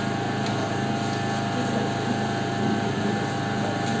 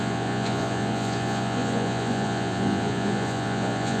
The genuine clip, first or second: first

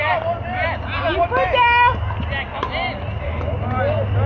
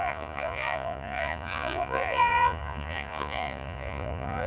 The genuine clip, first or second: first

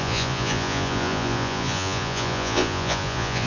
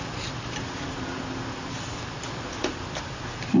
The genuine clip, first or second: second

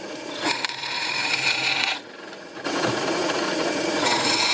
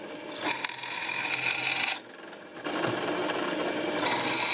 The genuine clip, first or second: second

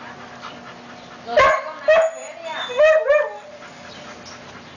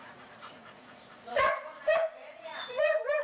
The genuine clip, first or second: first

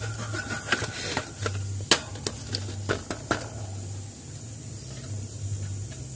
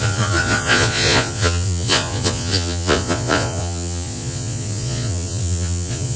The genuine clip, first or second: first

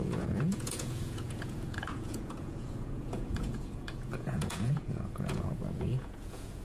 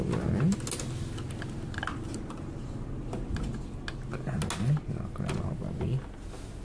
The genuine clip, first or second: second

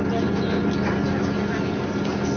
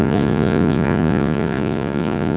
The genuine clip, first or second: first